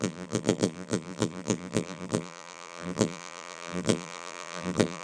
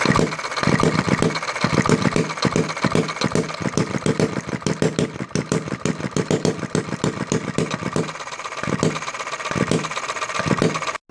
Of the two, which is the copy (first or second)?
first